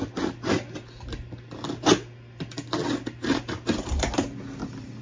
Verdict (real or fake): real